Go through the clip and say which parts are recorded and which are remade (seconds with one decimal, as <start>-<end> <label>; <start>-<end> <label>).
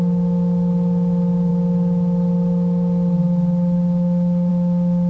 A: 0.0-5.1 recorded